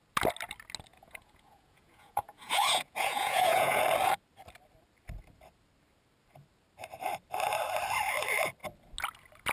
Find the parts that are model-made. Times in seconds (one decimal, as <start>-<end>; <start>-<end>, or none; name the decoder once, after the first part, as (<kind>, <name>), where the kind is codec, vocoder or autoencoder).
0.9-3.8 (vocoder, Vocos)